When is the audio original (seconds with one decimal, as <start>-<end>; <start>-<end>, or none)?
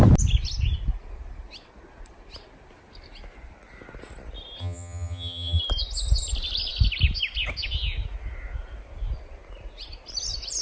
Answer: 0.0-4.6; 5.6-10.6